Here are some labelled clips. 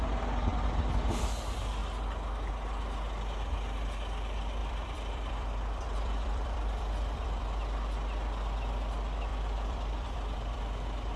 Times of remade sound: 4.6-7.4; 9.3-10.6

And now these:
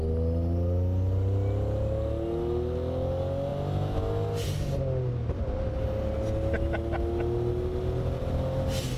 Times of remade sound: none